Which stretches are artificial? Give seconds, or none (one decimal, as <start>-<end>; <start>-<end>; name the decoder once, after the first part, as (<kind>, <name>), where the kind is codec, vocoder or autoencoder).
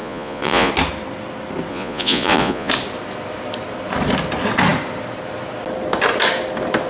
0.0-0.7 (vocoder, Vocos); 1.7-2.7